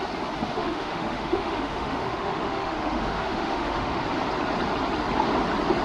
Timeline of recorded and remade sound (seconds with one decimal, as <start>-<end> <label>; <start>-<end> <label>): 0.0-0.5 recorded; 0.5-4.0 remade; 4.0-5.8 recorded